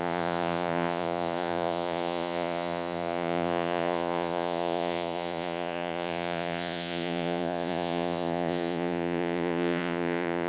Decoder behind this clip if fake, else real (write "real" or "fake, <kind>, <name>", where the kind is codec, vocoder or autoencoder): fake, vocoder, Vocos